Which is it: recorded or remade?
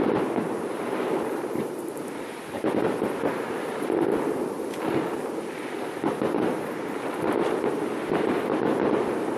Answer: remade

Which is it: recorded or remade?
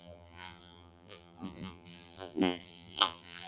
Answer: remade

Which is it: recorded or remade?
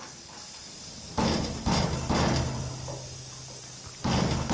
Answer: recorded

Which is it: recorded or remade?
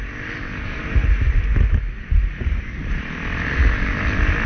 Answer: recorded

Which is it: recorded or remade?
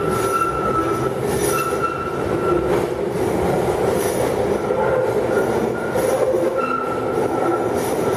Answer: recorded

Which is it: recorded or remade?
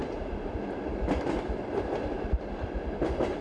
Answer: recorded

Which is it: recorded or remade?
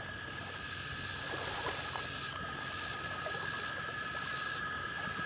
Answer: recorded